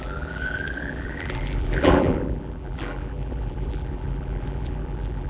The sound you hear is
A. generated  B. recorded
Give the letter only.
A